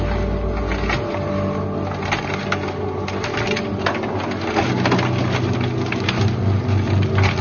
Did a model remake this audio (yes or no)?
no